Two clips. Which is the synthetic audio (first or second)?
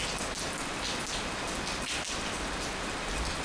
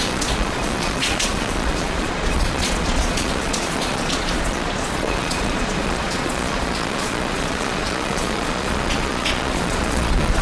second